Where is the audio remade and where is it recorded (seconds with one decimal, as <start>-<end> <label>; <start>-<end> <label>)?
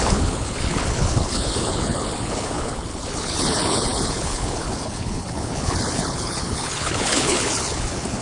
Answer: 0.0-8.2 remade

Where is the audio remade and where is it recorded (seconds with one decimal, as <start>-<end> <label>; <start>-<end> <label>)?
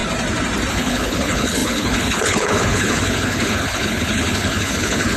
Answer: 0.0-0.7 recorded; 0.7-5.2 remade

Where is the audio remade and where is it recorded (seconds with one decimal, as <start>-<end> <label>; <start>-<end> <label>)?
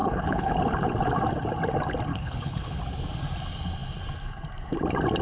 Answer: 0.0-0.5 remade; 0.5-2.1 recorded; 2.1-2.8 remade; 2.8-5.2 recorded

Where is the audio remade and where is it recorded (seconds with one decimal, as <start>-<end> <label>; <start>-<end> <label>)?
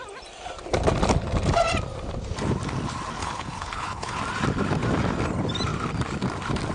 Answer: 0.0-3.2 recorded; 3.2-4.2 remade; 4.2-6.7 recorded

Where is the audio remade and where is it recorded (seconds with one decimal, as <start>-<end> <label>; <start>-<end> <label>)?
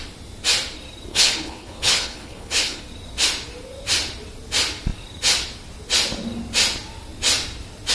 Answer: 0.0-1.1 recorded; 1.1-2.8 remade; 2.8-7.9 recorded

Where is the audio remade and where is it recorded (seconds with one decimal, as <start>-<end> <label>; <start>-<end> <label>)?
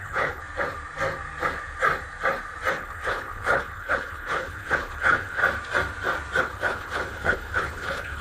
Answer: 0.0-0.4 remade; 0.4-2.7 recorded; 2.7-5.4 remade; 5.4-6.4 recorded; 6.4-8.2 remade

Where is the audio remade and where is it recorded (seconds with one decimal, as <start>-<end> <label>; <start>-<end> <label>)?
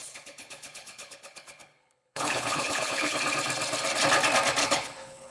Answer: 0.0-3.2 remade; 3.2-4.6 recorded; 4.6-5.3 remade